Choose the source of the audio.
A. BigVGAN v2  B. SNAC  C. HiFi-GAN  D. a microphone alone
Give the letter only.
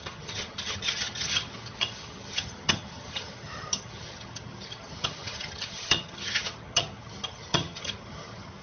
C